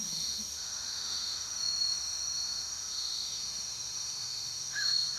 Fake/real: fake